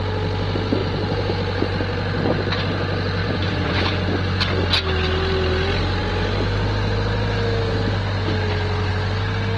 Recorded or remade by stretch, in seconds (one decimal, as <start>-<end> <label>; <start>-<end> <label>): 0.0-0.8 recorded; 0.8-1.3 remade; 1.3-3.2 recorded; 3.2-3.9 remade; 3.9-9.6 recorded